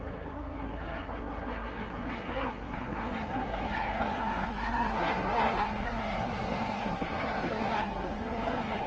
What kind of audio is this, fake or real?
fake